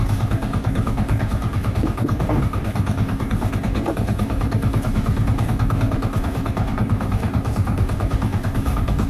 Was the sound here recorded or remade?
remade